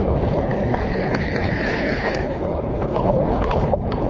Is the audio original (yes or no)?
no